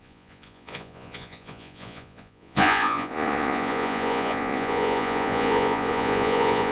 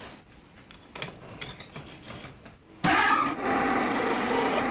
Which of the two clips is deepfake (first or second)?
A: first